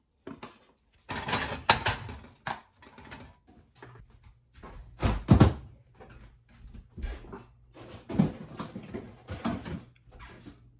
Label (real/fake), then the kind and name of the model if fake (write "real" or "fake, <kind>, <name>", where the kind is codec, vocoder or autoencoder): real